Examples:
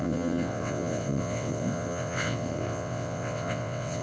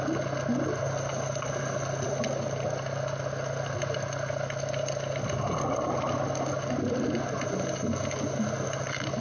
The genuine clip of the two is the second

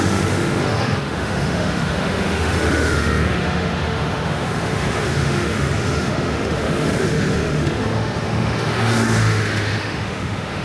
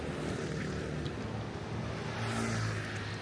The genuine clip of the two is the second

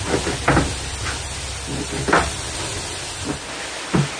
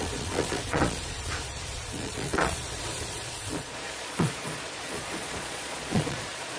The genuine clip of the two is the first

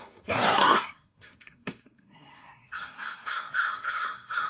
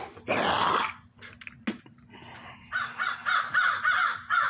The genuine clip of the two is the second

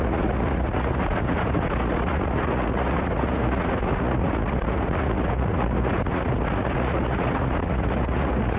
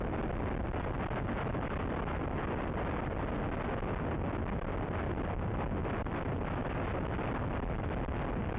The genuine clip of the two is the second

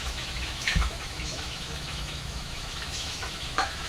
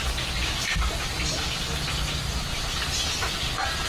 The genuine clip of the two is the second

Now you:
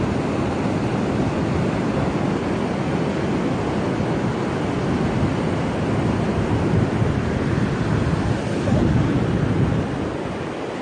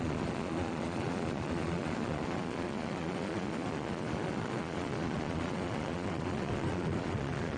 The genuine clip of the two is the first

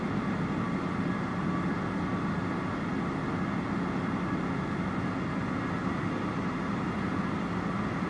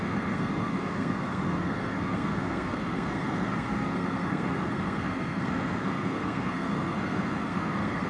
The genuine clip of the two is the first